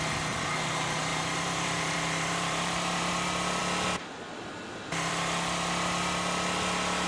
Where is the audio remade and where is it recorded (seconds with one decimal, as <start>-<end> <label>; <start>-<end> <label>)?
0.0-1.1 recorded; 1.1-3.1 remade; 3.1-7.1 recorded